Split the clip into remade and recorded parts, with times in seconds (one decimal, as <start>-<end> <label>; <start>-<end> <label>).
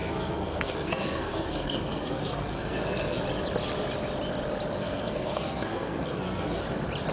0.0-3.2 remade; 3.2-4.8 recorded; 4.8-6.6 remade; 6.6-7.1 recorded